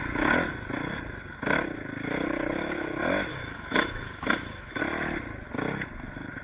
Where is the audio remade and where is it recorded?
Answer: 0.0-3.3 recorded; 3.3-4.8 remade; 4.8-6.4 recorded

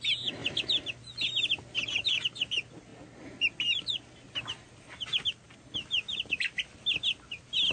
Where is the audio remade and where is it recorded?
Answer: 0.0-7.7 recorded